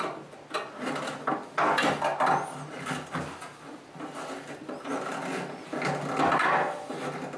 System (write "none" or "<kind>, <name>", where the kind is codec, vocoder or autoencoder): none